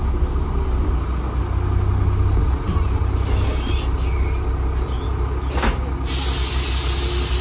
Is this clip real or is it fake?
real